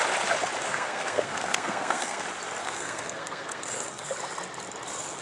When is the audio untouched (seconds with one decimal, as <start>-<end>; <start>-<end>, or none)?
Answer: 0.0-0.7; 2.2-2.6; 4.1-5.2